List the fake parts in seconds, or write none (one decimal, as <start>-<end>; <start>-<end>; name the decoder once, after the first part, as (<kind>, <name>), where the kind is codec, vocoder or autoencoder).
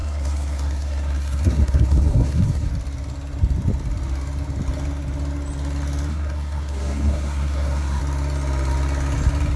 0.0-2.7 (codec, SNAC); 6.1-8.0